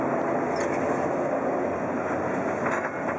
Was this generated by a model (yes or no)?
no